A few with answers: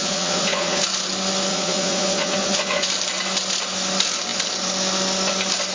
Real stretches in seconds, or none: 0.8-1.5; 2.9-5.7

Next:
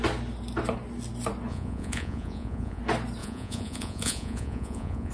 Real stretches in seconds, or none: 0.0-1.5; 2.8-3.2

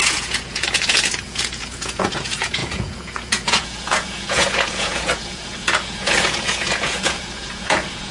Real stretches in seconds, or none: none

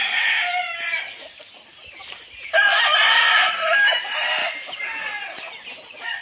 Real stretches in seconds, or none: 0.0-6.2

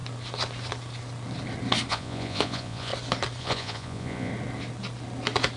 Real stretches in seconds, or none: 0.0-1.9; 2.9-3.4; 4.3-5.6